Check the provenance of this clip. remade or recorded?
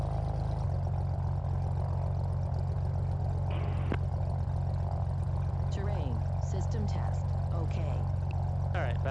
recorded